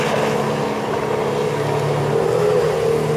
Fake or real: real